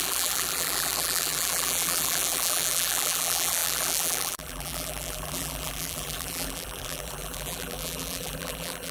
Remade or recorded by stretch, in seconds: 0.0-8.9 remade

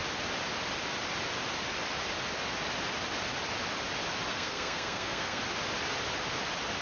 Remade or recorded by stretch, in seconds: 0.0-4.3 recorded; 4.3-5.4 remade; 5.4-6.8 recorded

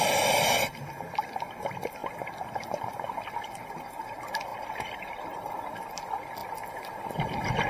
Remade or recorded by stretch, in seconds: 0.0-4.5 recorded; 4.5-5.5 remade; 5.5-7.7 recorded

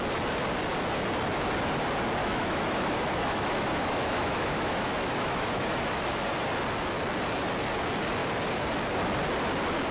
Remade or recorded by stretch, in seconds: 0.0-2.2 recorded; 2.2-6.3 remade; 6.3-9.9 recorded

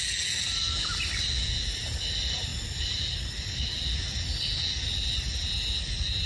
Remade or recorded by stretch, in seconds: 0.0-6.3 recorded

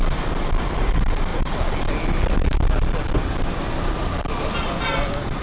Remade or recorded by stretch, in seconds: 0.0-5.4 recorded

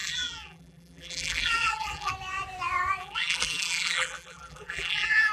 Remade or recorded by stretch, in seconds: 0.0-2.1 remade; 2.1-3.0 recorded; 3.0-5.3 remade